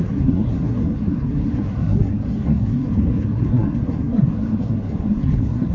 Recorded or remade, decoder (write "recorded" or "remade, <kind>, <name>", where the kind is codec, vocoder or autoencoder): remade, codec, SNAC